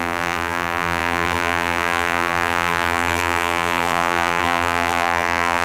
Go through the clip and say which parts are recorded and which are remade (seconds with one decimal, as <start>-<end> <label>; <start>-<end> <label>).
0.0-5.6 remade